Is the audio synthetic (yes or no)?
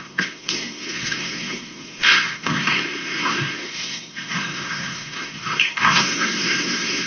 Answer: yes